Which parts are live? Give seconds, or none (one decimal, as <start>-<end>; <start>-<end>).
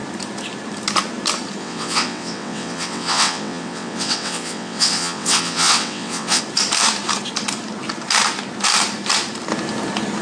0.0-1.6; 6.4-10.2